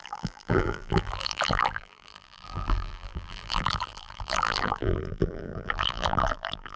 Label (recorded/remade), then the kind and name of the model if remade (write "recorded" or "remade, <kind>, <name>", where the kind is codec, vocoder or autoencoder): remade, vocoder, BigVGAN v2